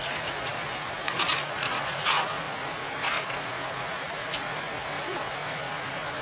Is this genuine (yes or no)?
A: no